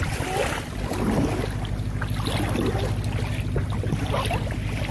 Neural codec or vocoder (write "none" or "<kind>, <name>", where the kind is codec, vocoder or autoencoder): none